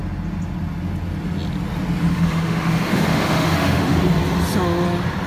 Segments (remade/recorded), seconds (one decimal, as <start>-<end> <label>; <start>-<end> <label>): 0.0-2.1 recorded; 2.1-4.0 remade; 4.0-5.3 recorded

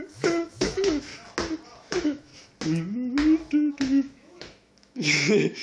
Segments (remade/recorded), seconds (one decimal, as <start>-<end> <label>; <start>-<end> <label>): 0.0-1.1 remade; 1.1-1.8 recorded; 1.8-2.3 remade; 2.3-3.7 recorded; 3.7-5.6 remade

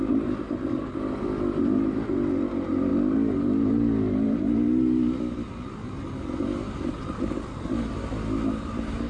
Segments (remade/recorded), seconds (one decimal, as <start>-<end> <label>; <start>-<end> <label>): 0.0-9.1 recorded